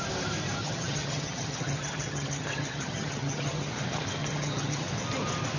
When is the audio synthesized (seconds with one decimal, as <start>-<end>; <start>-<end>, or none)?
0.6-3.7; 4.2-4.9